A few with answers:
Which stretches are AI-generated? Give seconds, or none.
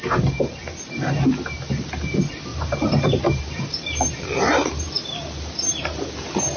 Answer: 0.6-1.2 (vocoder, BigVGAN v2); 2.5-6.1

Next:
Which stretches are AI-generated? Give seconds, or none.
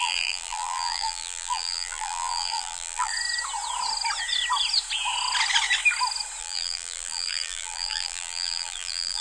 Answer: 0.0-3.1 (vocoder, BigVGAN v2); 6.4-9.2